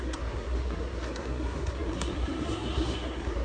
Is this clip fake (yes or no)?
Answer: yes